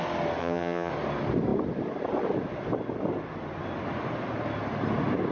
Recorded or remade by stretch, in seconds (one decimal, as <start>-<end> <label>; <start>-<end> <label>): 0.0-0.4 recorded; 0.4-0.9 remade; 0.9-5.3 recorded